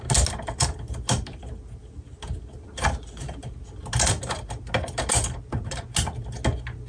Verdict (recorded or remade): recorded